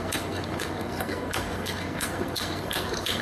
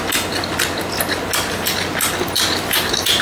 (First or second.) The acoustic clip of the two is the second